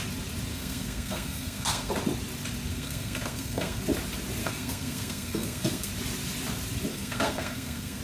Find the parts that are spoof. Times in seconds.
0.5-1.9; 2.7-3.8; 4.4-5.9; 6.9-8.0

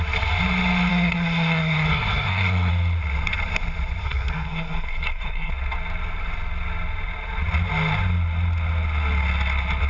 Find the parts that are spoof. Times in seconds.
0.9-2.7; 4.0-5.5